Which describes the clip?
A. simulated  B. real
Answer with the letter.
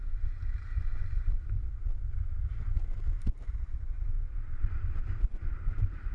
A